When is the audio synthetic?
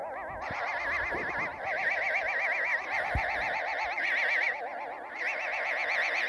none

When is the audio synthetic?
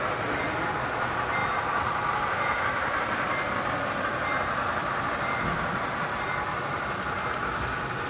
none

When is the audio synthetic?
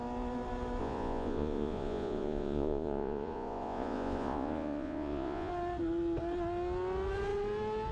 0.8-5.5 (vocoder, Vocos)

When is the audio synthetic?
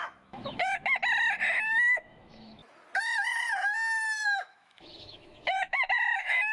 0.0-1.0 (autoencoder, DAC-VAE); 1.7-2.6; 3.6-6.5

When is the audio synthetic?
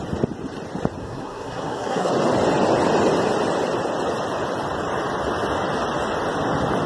1.0-2.1 (codec, SNAC)